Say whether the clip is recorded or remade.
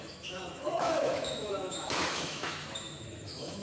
remade